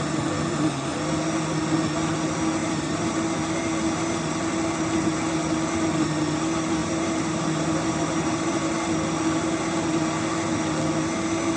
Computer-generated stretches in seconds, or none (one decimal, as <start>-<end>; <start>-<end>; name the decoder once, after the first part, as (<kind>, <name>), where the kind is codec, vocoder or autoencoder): 2.6-3.1 (vocoder, BigVGAN v2); 6.8-8.7